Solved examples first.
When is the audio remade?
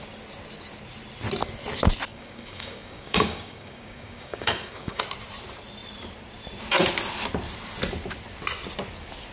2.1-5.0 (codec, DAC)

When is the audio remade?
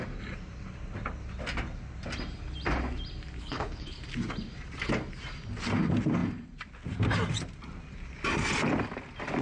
3.4-4.0 (codec, HILCodec)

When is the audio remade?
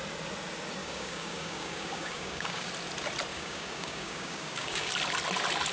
0.8-2.7 (codec, DAC); 3.3-4.9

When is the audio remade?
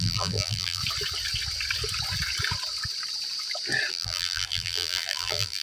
0.0-0.8 (vocoder, BigVGAN v2); 3.9-5.6